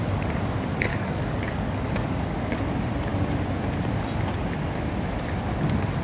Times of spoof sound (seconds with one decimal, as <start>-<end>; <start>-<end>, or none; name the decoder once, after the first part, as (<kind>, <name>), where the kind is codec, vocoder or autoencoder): 0.9-2.6 (codec, DAC)